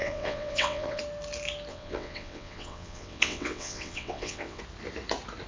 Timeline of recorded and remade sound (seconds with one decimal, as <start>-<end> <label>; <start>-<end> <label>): 0.0-1.0 remade; 1.0-1.7 recorded; 1.7-4.6 remade; 4.6-5.5 recorded